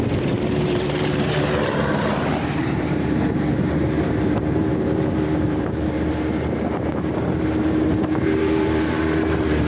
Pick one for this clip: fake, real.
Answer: fake